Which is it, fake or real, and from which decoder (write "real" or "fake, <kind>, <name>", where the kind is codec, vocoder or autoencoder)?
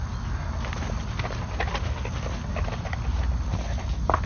real